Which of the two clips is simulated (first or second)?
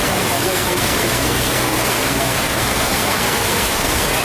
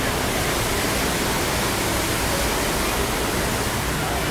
first